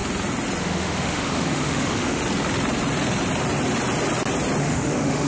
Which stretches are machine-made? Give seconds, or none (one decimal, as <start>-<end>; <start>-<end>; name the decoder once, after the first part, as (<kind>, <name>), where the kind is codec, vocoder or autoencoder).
0.6-2.2 (autoencoder, DAC-VAE); 4.6-5.3